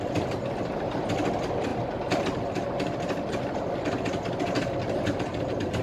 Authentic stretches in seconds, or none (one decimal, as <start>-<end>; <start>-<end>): 0.0-5.8